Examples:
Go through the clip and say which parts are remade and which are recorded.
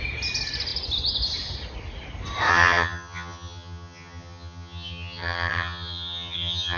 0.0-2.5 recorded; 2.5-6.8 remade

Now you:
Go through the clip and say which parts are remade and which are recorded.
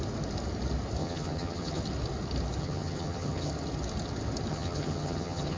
0.0-1.0 recorded; 1.0-1.8 remade; 1.8-2.6 recorded; 2.6-3.5 remade; 3.5-4.5 recorded; 4.5-5.6 remade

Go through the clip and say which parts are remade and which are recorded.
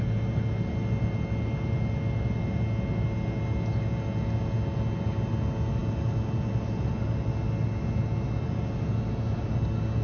0.0-10.0 recorded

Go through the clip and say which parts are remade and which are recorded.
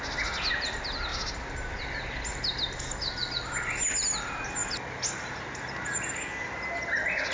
0.0-7.3 recorded